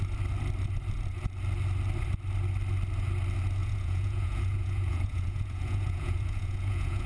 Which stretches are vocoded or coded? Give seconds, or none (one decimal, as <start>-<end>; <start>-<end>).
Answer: 3.6-7.1